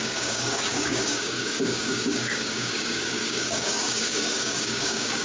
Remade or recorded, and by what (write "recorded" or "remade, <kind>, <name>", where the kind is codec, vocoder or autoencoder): remade, codec, DAC